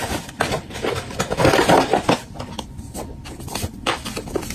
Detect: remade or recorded remade